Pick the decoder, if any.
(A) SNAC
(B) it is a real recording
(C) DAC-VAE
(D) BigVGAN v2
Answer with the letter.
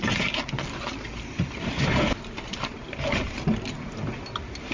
B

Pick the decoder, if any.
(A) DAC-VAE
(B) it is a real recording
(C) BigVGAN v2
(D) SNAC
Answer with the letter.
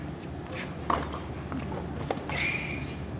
B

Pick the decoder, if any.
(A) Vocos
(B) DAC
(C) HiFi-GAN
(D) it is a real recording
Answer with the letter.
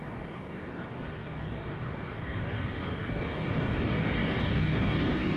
B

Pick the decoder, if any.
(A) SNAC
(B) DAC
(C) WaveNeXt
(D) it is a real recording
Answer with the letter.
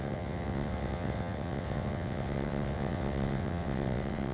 C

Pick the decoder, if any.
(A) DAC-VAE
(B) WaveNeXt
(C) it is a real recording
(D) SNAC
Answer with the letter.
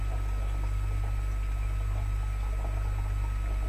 C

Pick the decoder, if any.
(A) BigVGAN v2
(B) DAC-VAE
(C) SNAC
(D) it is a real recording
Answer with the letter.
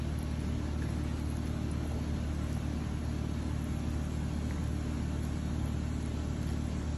D